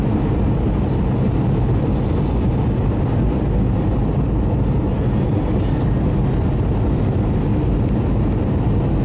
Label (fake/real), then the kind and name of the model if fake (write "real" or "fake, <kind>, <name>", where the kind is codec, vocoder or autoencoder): real